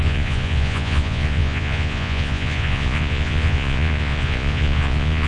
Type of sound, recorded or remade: remade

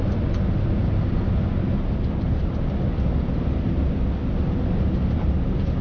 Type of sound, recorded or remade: recorded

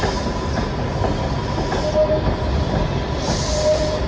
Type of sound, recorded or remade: recorded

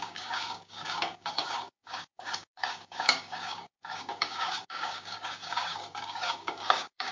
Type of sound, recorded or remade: remade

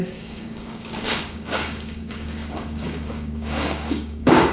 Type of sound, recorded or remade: remade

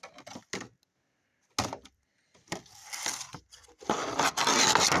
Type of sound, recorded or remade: recorded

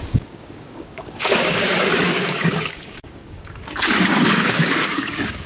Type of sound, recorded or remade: remade